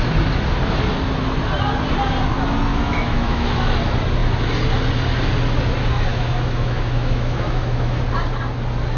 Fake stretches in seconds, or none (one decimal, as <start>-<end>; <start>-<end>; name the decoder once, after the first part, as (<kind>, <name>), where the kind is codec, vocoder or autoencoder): 2.7-3.6 (autoencoder, DAC-VAE); 6.1-8.0